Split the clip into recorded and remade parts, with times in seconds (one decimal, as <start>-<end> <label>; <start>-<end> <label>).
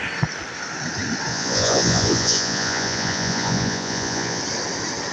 0.0-1.3 recorded; 1.3-4.4 remade; 4.4-5.1 recorded